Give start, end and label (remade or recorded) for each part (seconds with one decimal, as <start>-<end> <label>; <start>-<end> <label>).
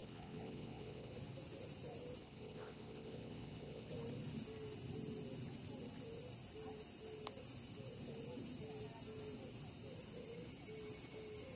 0.0-1.1 remade; 1.1-2.2 recorded; 2.2-3.9 remade; 3.9-11.6 recorded